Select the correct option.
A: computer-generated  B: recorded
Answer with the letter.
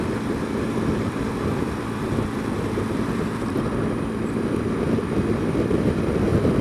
A